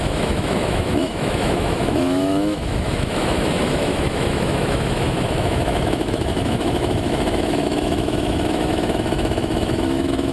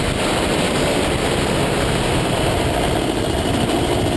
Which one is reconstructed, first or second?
first